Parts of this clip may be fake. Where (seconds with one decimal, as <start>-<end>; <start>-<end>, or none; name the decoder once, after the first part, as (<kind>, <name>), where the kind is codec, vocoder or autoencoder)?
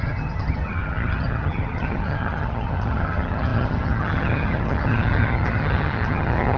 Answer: 0.0-6.6 (vocoder, HiFi-GAN)